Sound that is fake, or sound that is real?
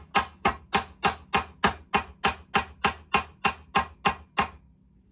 real